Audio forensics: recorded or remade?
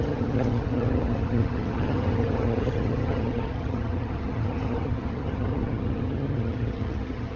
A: remade